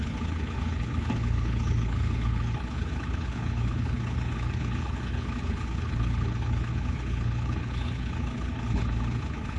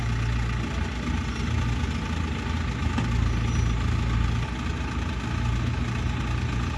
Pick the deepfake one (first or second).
first